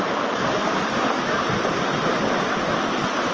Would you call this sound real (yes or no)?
yes